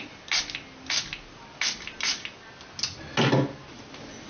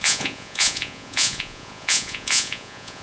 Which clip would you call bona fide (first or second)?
first